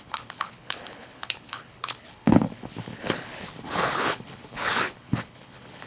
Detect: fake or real fake